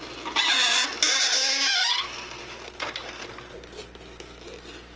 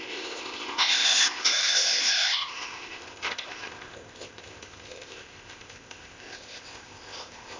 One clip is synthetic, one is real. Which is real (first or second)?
first